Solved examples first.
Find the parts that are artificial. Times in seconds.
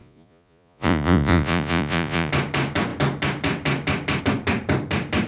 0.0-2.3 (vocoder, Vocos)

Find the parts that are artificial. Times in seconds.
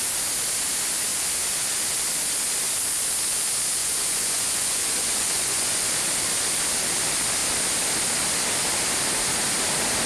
3.8-5.9 (vocoder, Vocos)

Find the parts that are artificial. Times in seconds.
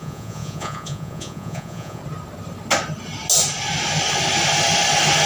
0.0-2.0 (vocoder, Vocos)